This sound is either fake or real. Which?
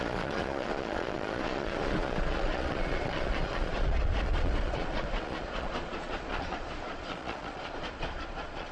fake